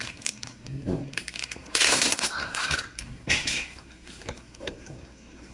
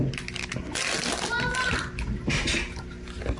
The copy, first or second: first